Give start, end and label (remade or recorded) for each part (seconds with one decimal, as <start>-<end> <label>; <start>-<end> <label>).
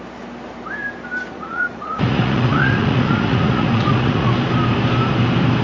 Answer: 0.0-1.3 recorded; 1.3-4.3 remade; 4.3-5.6 recorded